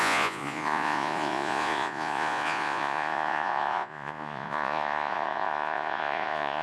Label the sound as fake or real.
fake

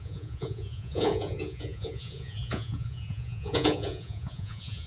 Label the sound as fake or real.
fake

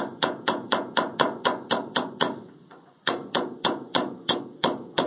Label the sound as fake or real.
fake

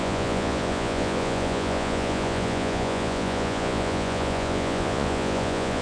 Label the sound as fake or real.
fake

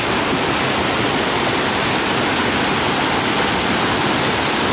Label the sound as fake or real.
real